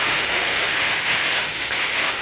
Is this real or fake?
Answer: fake